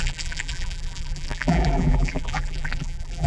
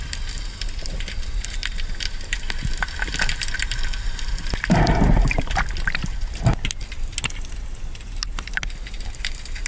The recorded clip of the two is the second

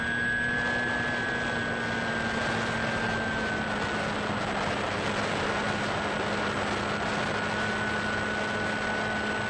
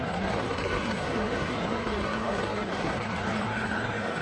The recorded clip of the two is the first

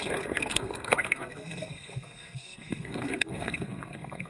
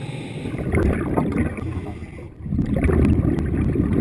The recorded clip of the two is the second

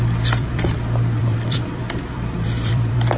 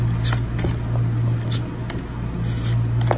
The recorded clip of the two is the second